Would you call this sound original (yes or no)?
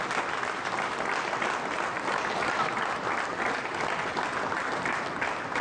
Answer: yes